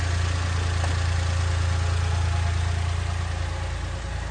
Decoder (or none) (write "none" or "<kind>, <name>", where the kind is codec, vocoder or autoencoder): none